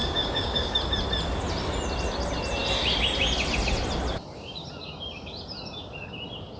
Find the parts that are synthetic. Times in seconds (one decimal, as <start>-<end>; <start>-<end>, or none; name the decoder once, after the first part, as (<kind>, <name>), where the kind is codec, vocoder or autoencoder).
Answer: 0.0-0.8 (codec, DAC)